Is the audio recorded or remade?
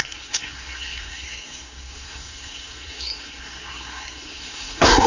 remade